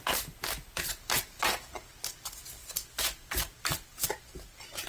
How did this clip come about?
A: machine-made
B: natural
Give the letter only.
B